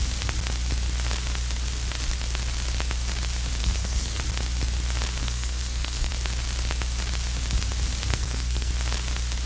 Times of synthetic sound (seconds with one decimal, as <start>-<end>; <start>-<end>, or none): 3.6-4.2; 5.2-6.1; 8.1-8.7